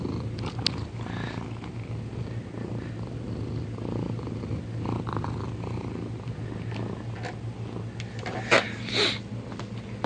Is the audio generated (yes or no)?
no